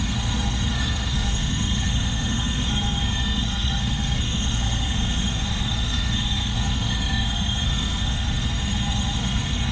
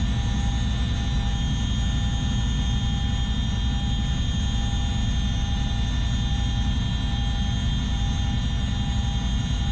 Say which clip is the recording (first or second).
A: second